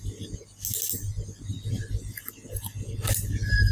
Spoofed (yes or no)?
no